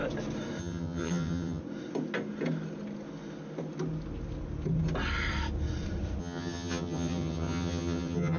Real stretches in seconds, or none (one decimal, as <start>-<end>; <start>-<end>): 0.0-0.6; 1.6-6.2